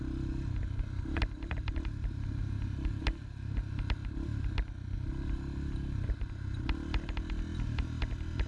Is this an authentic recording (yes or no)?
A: yes